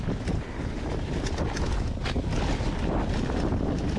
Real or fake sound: real